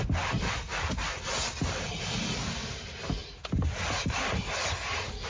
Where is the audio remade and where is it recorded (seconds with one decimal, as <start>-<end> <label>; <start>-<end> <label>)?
0.0-5.3 recorded